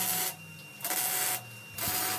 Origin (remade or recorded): recorded